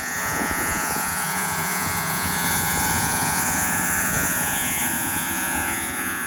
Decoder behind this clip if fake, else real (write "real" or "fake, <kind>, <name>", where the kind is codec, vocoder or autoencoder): fake, vocoder, Vocos